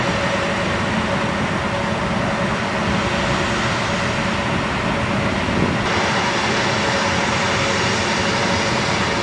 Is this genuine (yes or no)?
yes